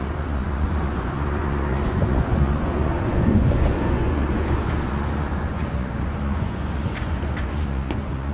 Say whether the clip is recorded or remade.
remade